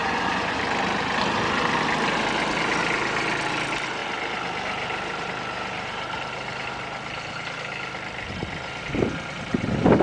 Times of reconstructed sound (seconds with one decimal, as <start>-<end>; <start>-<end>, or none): 0.0-0.6